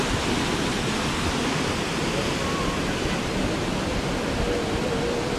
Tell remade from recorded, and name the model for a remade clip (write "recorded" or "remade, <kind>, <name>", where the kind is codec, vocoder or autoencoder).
recorded